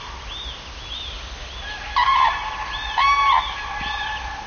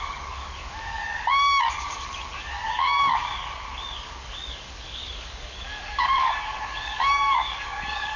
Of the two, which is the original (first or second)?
first